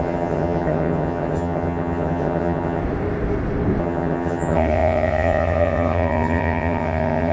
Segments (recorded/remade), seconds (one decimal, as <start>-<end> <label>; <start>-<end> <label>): 0.0-2.8 remade; 2.8-3.8 recorded; 3.8-7.3 remade